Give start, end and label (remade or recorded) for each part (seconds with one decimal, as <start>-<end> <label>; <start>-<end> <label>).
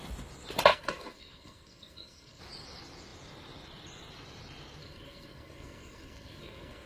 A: 0.0-0.7 recorded; 0.7-2.4 remade; 2.4-4.8 recorded; 4.8-6.9 remade